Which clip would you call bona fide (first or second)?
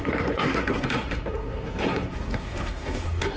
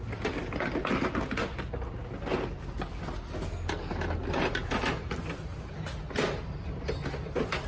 second